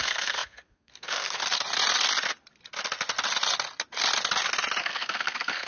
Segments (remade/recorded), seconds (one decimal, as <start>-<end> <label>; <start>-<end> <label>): 0.0-1.4 remade; 1.4-4.8 recorded; 4.8-5.7 remade